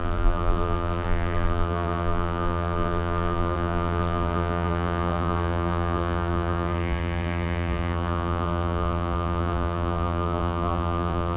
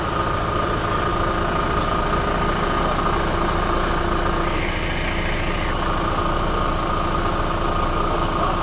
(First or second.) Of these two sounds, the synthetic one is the first